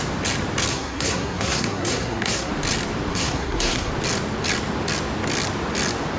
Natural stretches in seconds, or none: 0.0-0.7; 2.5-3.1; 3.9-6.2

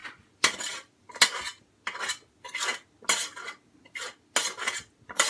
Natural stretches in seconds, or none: 1.2-5.3